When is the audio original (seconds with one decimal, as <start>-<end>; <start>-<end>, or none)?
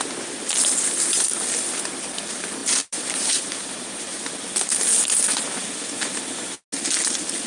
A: 0.0-2.6; 4.3-7.5